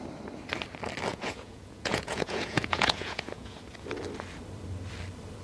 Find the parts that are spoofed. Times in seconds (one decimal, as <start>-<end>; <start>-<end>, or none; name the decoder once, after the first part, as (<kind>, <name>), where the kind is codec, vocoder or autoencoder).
1.1-3.6 (vocoder, Vocos)